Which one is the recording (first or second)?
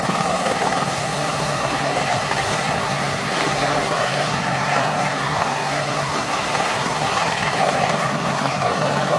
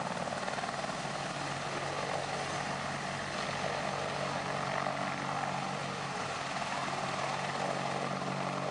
second